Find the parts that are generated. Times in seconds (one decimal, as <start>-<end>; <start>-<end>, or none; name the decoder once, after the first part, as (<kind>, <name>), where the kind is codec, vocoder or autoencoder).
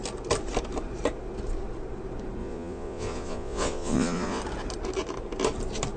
2.4-4.4 (vocoder, Vocos)